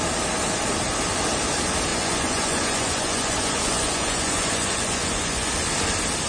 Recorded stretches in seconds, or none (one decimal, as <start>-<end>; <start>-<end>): 0.0-1.9; 5.5-6.3